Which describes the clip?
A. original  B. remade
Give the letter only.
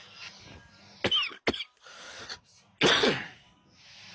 A